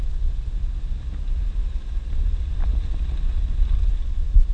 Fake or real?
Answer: real